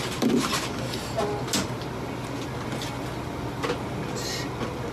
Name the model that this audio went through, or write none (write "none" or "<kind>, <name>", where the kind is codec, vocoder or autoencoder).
none